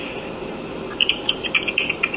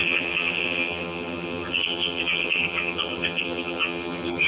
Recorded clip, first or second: first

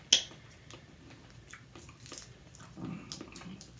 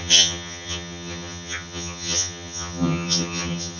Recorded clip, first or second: first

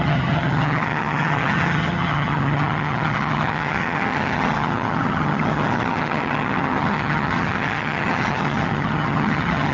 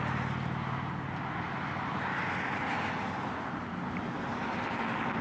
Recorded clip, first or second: second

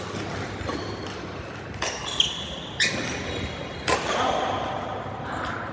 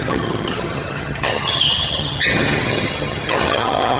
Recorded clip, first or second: first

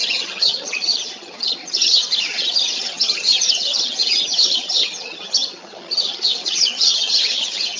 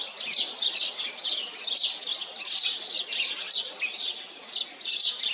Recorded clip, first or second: second